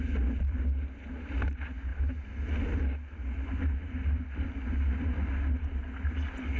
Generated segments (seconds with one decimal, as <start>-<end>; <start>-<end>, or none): none